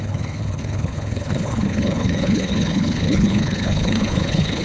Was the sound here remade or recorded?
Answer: remade